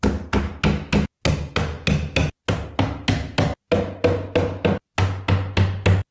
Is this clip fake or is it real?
real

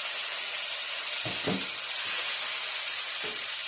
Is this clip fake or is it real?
real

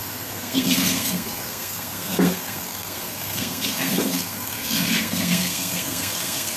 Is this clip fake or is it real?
fake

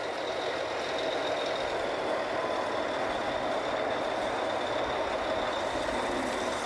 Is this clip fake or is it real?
real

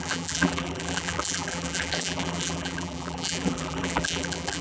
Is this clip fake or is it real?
fake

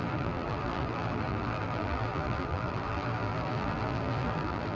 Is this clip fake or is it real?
fake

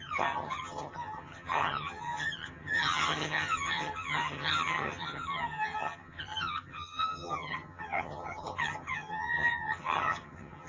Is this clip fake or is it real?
fake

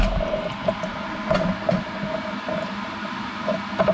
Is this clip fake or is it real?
real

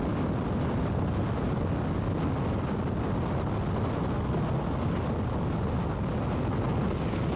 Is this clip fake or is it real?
real